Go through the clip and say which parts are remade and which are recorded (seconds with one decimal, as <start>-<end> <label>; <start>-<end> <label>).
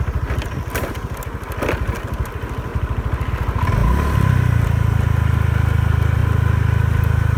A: 0.0-7.4 recorded